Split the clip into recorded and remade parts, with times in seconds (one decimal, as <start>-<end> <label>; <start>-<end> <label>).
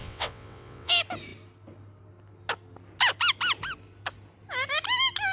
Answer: 0.0-0.9 remade; 0.9-5.3 recorded